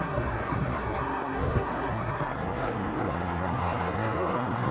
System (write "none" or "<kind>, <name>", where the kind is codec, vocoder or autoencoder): codec, SNAC